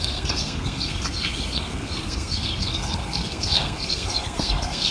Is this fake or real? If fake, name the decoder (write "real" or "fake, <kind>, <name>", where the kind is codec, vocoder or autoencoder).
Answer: fake, codec, SNAC